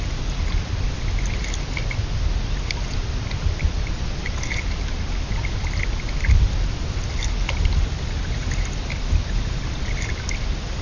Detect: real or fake real